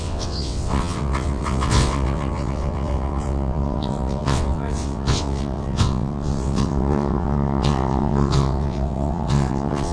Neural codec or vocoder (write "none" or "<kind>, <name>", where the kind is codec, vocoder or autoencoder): vocoder, WaveNeXt